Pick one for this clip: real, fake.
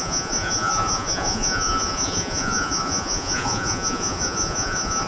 fake